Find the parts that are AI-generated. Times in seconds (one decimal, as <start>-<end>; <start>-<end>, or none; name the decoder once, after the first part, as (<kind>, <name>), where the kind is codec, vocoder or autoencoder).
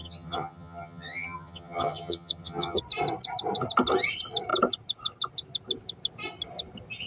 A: 0.0-2.8 (vocoder, HiFi-GAN)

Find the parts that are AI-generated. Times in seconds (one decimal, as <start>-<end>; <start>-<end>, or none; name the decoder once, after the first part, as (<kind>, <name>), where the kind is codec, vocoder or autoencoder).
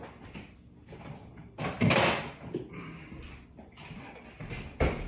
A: none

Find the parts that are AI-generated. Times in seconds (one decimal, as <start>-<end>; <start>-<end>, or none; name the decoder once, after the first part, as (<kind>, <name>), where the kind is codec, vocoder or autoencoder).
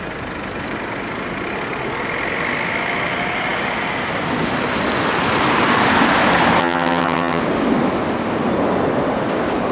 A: 6.6-7.4 (vocoder, HiFi-GAN)